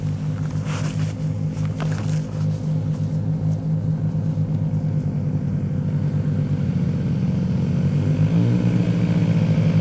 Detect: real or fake real